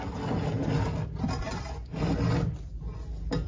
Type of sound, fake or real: real